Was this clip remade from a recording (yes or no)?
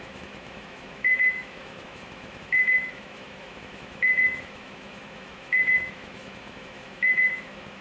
yes